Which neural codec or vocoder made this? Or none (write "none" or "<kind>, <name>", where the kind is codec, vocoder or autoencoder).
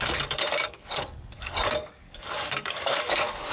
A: codec, DAC